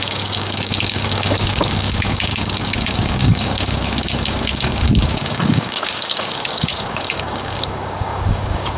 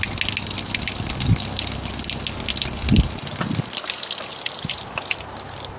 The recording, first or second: second